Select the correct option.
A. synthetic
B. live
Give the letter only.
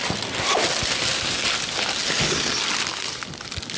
B